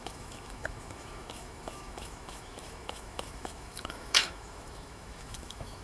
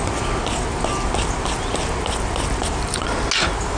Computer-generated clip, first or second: first